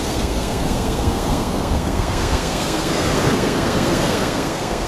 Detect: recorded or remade remade